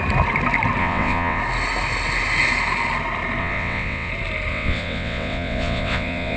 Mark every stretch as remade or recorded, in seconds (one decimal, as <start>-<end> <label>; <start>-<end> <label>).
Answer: 0.0-0.8 recorded; 0.8-1.4 remade; 1.4-3.4 recorded; 3.4-4.1 remade; 4.1-4.5 recorded; 4.5-6.4 remade